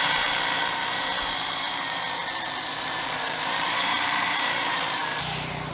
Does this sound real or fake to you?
fake